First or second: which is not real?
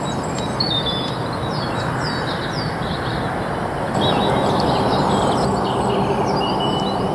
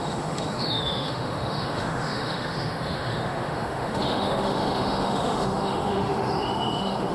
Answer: second